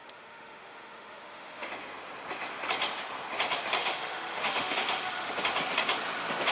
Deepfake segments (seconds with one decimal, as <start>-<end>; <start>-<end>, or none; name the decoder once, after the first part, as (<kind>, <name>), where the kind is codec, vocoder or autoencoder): 0.0-1.7 (autoencoder, DAC-VAE); 3.8-5.3